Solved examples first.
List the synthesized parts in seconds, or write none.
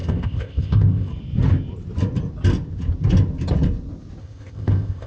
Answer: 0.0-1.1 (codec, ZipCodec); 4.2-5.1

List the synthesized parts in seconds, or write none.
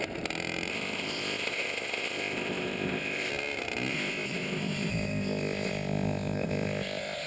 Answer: 0.7-3.3 (codec, ZipCodec); 3.9-7.3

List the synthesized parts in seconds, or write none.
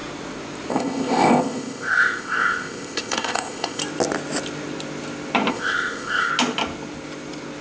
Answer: 0.7-3.8 (codec, ZipCodec); 5.5-6.3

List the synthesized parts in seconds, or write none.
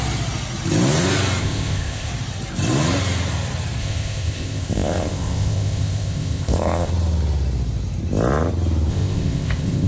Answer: 1.4-2.1 (codec, ZipCodec); 3.8-6.9; 8.9-9.9